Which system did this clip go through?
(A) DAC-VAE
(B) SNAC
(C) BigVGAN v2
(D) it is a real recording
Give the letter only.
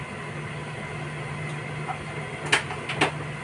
D